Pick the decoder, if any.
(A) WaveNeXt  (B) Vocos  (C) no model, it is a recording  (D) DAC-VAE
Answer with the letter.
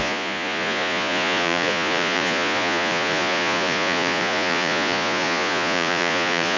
B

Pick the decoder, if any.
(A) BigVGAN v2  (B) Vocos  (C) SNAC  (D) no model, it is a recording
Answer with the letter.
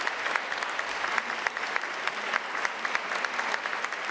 D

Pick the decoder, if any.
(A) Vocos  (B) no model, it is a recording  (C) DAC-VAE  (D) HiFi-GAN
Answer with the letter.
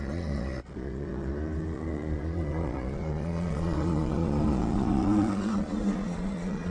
A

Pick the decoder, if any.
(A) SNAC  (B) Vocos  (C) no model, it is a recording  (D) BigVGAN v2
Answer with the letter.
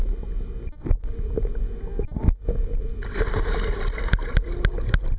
C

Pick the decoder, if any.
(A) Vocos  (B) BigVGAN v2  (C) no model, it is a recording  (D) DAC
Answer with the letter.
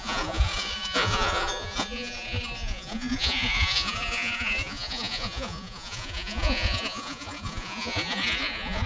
A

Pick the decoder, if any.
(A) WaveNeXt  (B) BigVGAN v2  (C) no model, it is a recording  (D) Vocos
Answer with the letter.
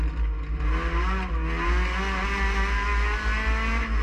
C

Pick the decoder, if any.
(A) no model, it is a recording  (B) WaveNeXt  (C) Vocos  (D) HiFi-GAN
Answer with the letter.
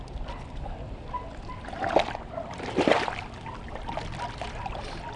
A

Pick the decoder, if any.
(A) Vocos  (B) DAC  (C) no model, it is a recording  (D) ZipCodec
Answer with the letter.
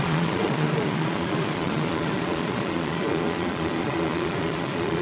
A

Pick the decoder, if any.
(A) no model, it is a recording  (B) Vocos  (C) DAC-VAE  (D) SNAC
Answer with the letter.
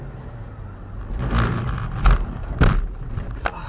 A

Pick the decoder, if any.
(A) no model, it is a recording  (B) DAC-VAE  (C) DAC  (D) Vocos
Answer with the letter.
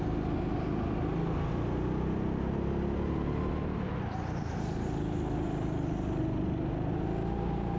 A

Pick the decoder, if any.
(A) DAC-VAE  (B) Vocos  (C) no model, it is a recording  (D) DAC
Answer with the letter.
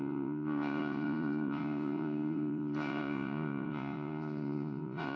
B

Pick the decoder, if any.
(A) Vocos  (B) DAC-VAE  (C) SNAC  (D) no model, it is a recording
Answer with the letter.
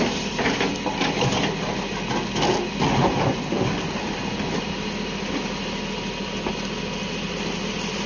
D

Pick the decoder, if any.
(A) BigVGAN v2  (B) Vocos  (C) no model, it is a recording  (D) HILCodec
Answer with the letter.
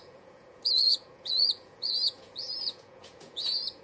B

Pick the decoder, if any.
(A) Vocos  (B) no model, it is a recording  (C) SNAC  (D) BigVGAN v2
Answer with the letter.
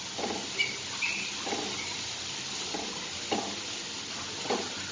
B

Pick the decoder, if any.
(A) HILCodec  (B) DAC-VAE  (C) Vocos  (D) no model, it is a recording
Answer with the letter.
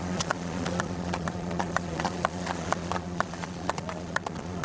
C